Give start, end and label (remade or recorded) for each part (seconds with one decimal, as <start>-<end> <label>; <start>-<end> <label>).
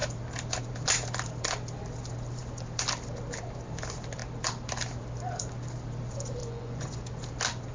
0.0-6.4 recorded; 6.4-7.0 remade; 7.0-7.7 recorded